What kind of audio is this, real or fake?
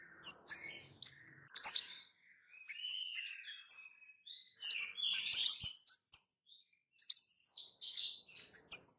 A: real